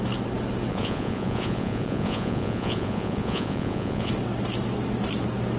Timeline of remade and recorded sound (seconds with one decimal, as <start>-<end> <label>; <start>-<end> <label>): 0.0-0.7 recorded; 0.7-4.1 remade; 4.1-5.6 recorded